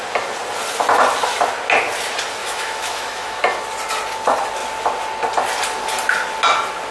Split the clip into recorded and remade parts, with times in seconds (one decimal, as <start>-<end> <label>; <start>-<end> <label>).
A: 0.0-2.4 recorded; 2.4-3.4 remade; 3.4-6.9 recorded